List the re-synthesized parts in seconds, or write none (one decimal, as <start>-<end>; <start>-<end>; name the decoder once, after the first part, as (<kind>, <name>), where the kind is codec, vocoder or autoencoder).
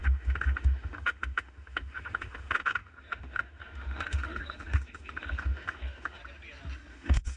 0.0-6.2 (autoencoder, DAC-VAE); 6.9-7.4